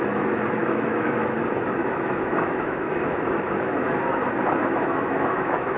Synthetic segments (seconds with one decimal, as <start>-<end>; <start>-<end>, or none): 0.6-1.4; 1.8-3.9; 4.6-5.8